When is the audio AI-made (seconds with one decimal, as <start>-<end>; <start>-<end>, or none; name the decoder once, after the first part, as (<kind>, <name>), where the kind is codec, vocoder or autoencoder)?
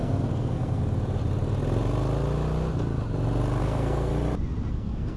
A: 0.0-0.8 (codec, SNAC); 3.6-4.1; 4.7-5.2